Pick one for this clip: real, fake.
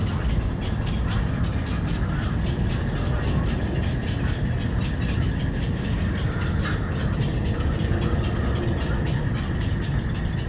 real